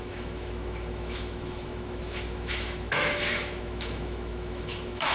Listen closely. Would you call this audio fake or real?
fake